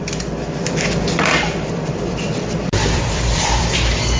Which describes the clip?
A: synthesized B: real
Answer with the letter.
A